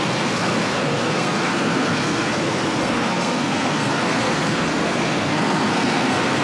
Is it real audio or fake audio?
fake